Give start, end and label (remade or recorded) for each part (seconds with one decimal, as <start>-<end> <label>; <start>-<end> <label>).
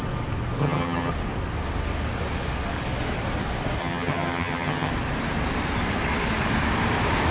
0.0-0.6 recorded; 0.6-1.1 remade; 1.1-3.8 recorded; 3.8-4.9 remade; 4.9-7.3 recorded